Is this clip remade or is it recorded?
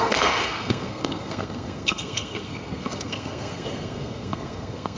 remade